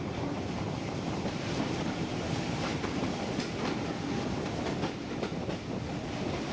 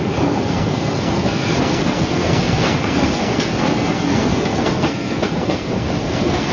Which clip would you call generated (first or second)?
second